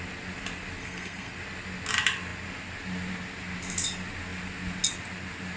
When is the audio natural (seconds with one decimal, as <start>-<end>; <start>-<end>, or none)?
0.0-0.8; 1.3-5.6